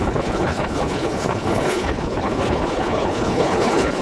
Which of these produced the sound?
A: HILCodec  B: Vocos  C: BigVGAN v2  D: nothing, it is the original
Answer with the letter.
A